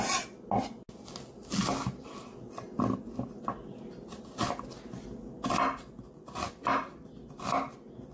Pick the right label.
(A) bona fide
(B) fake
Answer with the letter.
A